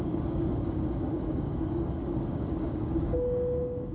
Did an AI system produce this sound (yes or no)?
yes